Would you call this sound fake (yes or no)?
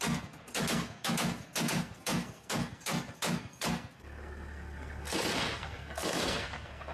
yes